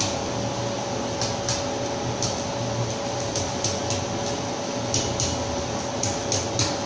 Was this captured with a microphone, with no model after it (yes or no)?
yes